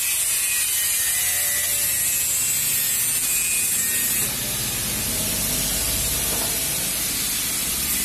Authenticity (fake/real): real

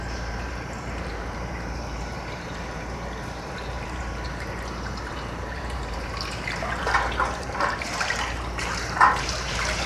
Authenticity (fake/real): fake